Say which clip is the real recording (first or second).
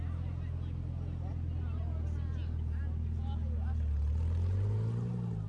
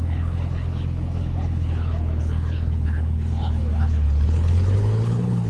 first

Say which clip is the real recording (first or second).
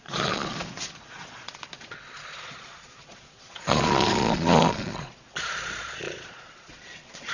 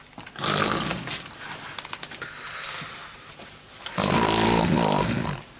second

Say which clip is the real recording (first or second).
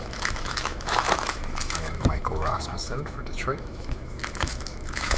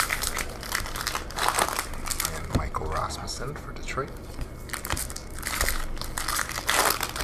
second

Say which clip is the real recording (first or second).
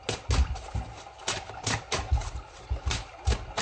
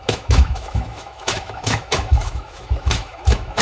first